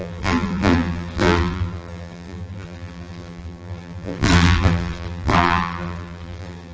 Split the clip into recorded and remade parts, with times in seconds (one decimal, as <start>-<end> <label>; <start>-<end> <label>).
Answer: 0.0-6.7 remade